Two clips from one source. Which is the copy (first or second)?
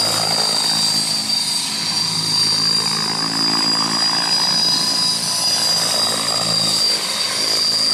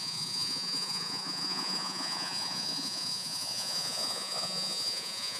second